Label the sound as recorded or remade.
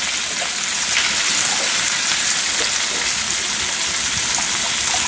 recorded